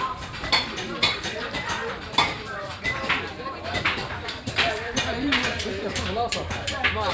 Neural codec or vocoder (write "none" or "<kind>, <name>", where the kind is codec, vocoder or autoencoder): vocoder, BigVGAN v2